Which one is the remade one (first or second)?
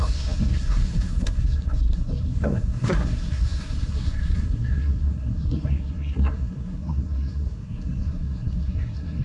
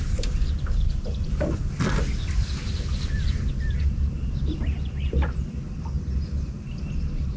first